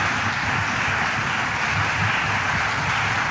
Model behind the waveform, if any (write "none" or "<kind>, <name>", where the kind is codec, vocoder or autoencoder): none